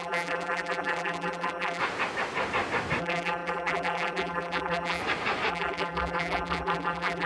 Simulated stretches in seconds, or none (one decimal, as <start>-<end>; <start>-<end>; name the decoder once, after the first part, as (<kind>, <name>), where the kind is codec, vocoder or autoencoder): 0.0-1.8 (vocoder, BigVGAN v2); 3.0-5.0; 5.5-7.3